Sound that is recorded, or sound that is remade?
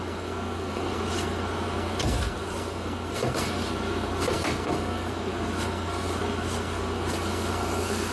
remade